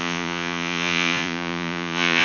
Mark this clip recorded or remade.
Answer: remade